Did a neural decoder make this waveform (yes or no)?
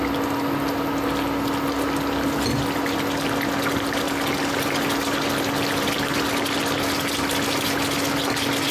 no